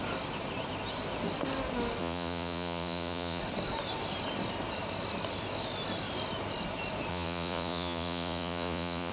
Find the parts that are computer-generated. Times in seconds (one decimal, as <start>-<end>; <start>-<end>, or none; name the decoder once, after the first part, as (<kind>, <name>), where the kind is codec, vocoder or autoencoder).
2.0-3.4 (vocoder, Vocos); 7.1-9.1